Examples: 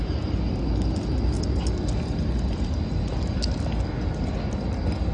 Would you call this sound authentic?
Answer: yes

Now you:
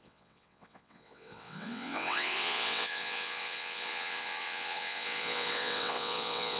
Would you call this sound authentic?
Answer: no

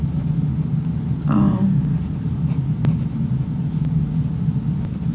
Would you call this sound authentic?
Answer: yes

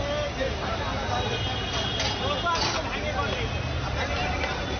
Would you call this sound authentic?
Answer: yes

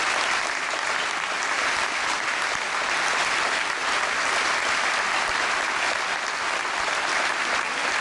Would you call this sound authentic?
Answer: yes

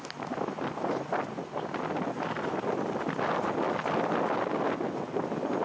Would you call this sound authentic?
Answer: yes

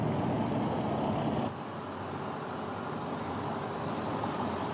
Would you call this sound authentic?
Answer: yes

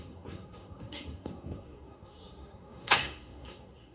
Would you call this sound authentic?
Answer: no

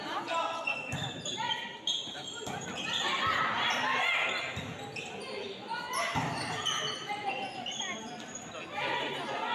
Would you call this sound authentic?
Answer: yes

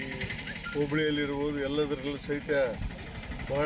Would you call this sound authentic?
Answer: yes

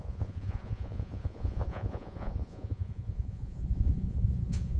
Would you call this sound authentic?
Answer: no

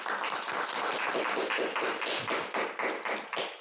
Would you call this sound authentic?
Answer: yes